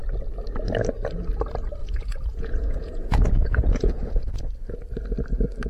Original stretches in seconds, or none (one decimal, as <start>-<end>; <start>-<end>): 0.0-1.8; 4.4-5.7